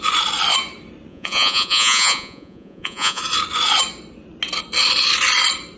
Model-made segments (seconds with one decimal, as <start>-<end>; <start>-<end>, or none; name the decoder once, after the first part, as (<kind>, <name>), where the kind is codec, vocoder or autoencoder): 1.1-3.2 (vocoder, Vocos)